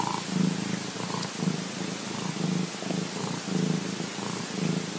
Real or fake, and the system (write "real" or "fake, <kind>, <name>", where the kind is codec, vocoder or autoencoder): real